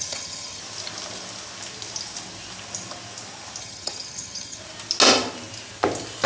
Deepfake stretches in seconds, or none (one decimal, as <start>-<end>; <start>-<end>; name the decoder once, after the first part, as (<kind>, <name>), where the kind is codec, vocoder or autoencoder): 0.0-0.6 (vocoder, HiFi-GAN); 3.6-4.6